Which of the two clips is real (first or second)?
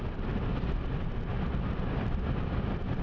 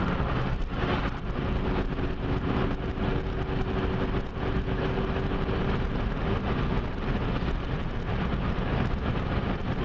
second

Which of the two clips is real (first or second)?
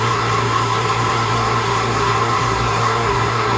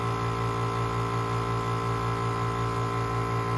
second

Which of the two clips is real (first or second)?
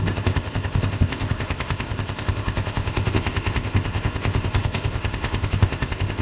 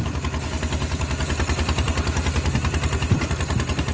second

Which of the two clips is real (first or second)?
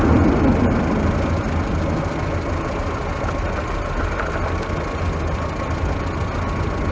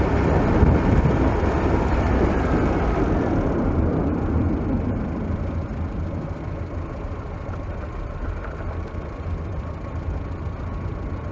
first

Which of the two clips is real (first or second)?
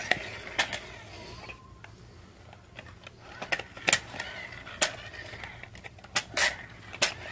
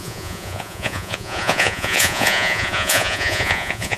first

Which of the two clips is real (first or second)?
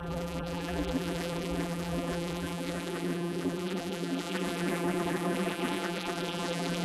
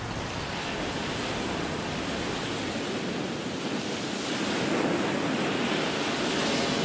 second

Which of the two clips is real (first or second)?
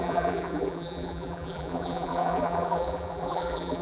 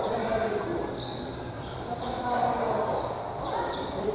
second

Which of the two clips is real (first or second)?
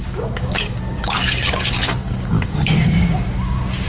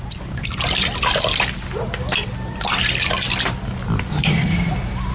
second